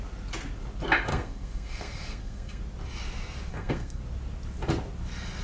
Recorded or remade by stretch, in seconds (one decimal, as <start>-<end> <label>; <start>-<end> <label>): 0.0-1.1 recorded; 1.1-2.6 remade; 2.6-3.5 recorded; 3.5-4.0 remade; 4.0-5.4 recorded